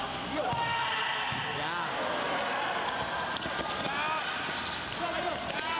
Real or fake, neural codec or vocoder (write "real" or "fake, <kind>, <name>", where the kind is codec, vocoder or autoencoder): real